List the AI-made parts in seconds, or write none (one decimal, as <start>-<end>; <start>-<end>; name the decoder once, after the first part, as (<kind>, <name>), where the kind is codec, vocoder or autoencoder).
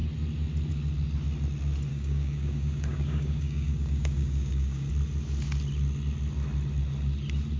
1.9-4.9 (codec, DAC)